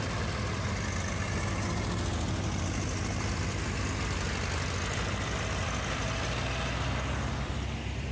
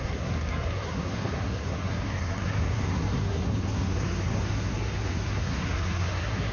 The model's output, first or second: second